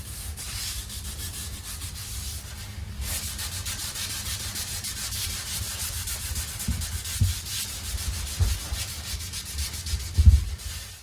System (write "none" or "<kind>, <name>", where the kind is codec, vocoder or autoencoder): none